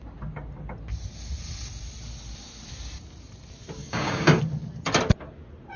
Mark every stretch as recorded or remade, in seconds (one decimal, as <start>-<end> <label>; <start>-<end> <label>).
0.0-3.8 recorded; 3.8-4.4 remade; 4.4-5.8 recorded

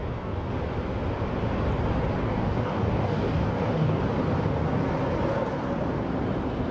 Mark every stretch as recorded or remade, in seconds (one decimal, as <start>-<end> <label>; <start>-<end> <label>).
0.0-2.2 recorded; 2.2-4.0 remade; 4.0-6.7 recorded

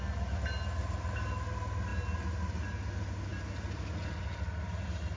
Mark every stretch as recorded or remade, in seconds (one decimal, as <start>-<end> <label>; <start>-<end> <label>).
0.0-5.2 recorded

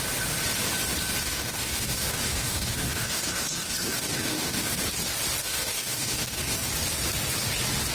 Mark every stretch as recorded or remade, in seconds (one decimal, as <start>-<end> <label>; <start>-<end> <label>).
0.0-1.2 recorded; 1.2-4.8 remade; 4.8-5.4 recorded; 5.4-6.7 remade; 6.7-7.9 recorded

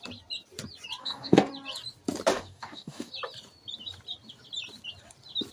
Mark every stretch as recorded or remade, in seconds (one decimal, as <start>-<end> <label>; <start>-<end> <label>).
0.0-1.0 recorded; 1.0-1.5 remade; 1.5-2.3 recorded; 2.3-3.1 remade; 3.1-5.5 recorded

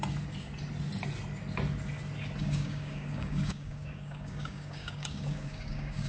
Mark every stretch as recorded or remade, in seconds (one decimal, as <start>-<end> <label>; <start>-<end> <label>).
0.0-2.4 recorded; 2.4-6.1 remade